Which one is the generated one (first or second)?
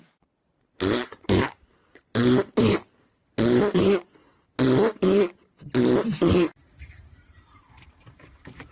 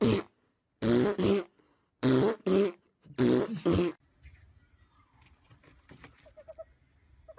first